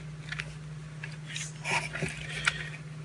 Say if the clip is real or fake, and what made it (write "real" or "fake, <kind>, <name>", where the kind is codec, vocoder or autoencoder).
real